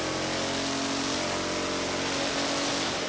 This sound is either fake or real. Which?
real